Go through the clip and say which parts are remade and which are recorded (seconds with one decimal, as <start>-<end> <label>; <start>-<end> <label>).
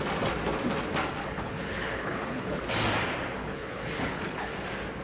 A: 0.0-1.2 recorded; 1.2-2.6 remade; 2.6-3.4 recorded; 3.4-4.5 remade; 4.5-5.0 recorded